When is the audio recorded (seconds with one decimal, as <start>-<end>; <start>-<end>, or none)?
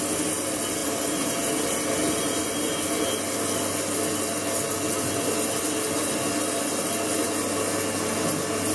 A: 0.0-8.7